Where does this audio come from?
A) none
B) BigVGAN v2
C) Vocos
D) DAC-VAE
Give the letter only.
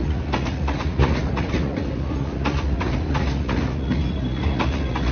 C